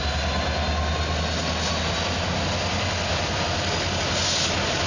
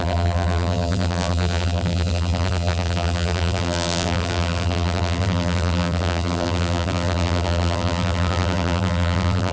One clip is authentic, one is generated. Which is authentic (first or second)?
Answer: first